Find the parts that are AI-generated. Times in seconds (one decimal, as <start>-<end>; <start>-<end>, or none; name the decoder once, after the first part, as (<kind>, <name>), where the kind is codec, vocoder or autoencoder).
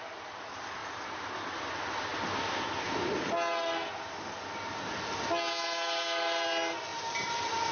0.8-1.5 (vocoder, BigVGAN v2); 6.9-7.7